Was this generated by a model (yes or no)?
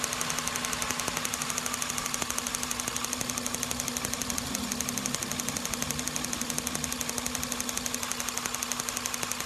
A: no